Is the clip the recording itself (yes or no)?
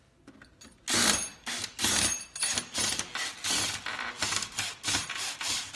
yes